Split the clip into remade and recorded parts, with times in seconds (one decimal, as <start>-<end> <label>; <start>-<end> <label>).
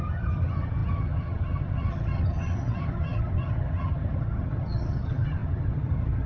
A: 0.0-6.3 remade